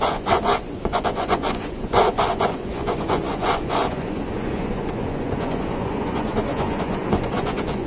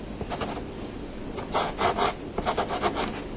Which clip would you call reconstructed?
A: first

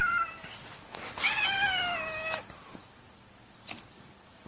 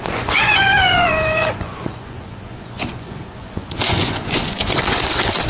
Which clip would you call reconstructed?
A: second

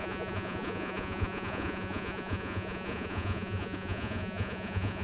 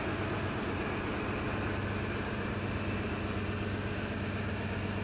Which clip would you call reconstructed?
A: first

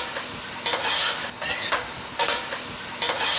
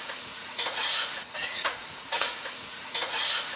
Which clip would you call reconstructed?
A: second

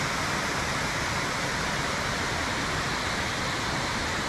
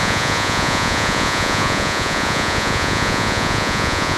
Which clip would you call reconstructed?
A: second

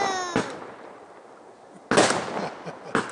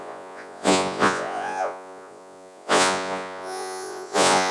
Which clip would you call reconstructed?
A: second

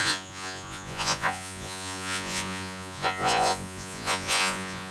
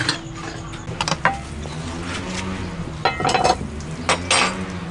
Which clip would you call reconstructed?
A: first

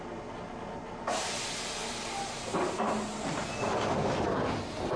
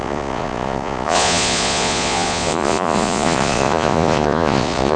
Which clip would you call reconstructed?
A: second